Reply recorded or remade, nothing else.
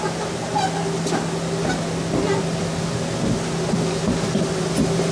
recorded